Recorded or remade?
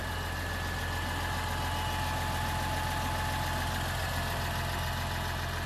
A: recorded